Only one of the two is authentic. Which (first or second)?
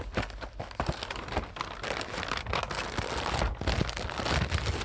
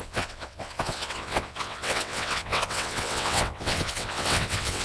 first